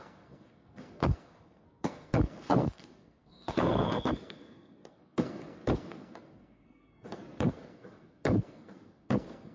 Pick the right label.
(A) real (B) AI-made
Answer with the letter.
B